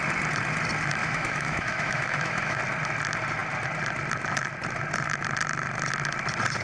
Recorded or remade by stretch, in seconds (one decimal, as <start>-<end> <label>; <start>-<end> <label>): 0.0-1.0 recorded; 1.0-2.6 remade; 2.6-6.6 recorded